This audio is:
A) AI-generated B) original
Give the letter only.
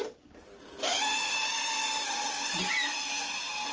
B